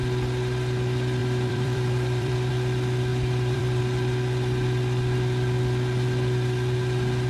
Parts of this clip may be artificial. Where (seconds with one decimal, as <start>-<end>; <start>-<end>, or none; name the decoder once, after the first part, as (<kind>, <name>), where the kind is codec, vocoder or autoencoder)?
1.2-2.5 (vocoder, BigVGAN v2); 3.1-3.8